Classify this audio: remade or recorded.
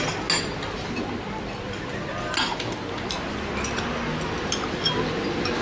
recorded